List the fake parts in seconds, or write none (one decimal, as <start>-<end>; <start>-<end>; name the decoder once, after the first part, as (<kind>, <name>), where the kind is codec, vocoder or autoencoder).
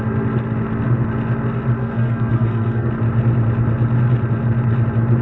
1.8-2.9 (codec, SNAC)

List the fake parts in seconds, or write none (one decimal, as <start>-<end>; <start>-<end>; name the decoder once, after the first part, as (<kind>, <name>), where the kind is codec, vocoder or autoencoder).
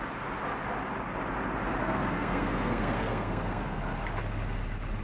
1.8-3.8 (codec, SNAC)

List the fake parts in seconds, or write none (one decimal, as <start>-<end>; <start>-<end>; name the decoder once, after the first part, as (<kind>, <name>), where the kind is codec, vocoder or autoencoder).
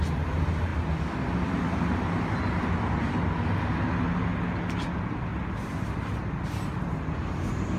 none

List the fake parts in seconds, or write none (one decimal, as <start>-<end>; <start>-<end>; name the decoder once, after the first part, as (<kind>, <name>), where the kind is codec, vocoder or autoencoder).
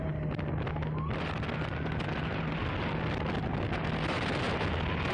none